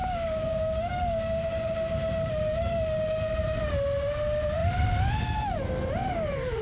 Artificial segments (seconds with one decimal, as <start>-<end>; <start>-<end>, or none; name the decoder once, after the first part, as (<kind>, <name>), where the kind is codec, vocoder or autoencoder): 0.0-3.2 (codec, DAC)